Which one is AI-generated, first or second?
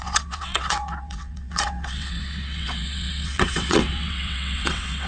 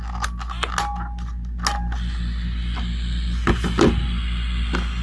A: first